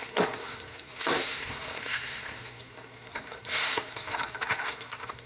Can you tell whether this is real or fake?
fake